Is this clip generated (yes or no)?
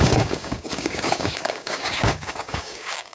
yes